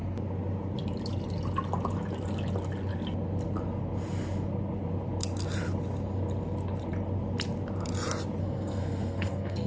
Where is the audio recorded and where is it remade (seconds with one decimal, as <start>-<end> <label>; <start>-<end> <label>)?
0.0-8.4 recorded; 8.4-9.7 remade